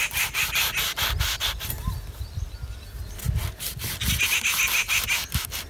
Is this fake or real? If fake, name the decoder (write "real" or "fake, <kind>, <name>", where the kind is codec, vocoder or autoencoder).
real